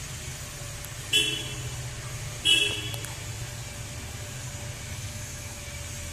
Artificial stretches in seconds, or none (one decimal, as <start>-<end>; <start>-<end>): 5.1-5.6